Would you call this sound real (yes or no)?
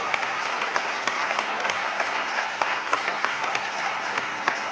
no